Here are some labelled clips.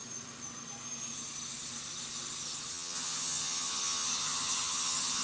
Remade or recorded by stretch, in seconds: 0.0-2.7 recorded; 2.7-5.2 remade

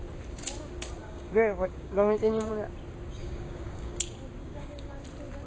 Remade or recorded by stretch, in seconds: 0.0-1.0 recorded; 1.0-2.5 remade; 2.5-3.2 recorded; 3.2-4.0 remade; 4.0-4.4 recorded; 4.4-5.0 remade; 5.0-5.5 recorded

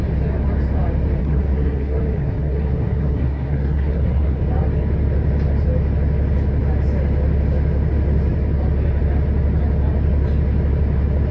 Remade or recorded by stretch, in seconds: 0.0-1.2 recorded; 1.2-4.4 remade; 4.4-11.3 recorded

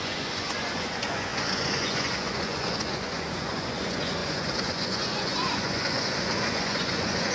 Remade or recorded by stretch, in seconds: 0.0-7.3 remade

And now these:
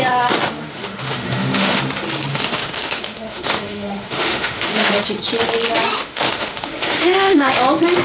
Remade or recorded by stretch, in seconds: 0.0-0.7 recorded; 0.7-1.8 remade; 1.8-2.3 recorded; 2.3-5.0 remade; 5.0-5.9 recorded; 5.9-7.5 remade; 7.5-8.0 recorded